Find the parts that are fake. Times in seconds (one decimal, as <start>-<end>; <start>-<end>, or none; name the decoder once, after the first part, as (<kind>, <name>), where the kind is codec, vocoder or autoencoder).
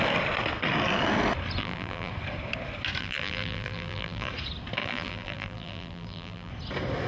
1.6-2.1 (vocoder, BigVGAN v2); 3.0-4.3; 4.8-6.5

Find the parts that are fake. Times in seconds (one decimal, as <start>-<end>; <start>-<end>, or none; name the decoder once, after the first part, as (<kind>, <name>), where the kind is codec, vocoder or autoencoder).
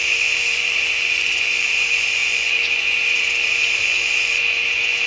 0.0-5.1 (vocoder, Vocos)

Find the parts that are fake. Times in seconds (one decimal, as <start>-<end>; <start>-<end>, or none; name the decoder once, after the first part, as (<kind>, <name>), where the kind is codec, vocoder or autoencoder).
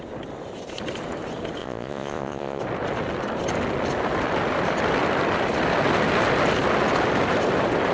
1.6-2.6 (vocoder, Vocos)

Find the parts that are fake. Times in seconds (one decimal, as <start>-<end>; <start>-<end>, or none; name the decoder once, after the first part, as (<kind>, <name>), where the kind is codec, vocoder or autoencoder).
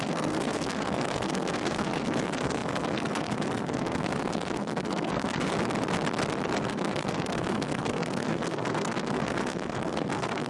0.0-5.5 (codec, SNAC); 6.6-10.5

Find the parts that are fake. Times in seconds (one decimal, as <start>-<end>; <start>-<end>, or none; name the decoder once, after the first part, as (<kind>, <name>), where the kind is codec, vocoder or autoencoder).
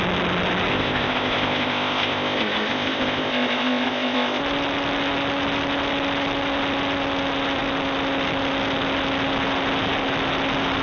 0.7-4.4 (codec, ZipCodec)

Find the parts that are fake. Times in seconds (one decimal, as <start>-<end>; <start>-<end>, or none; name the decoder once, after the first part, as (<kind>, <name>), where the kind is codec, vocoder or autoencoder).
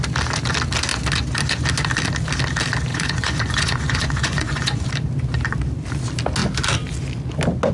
2.9-4.9 (vocoder, Vocos)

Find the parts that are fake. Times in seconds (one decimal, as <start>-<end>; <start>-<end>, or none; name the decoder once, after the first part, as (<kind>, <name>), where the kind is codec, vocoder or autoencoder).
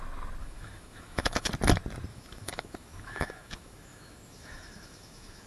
0.4-1.5 (autoencoder, DAC-VAE); 2.1-5.5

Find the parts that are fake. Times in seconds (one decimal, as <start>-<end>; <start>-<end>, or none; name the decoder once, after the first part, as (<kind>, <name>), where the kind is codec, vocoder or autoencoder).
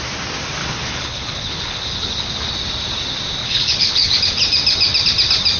0.6-2.5 (codec, HILCodec); 3.4-4.1